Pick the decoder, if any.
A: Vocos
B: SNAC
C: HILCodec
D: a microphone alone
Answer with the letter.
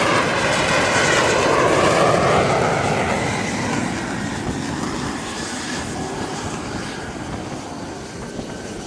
D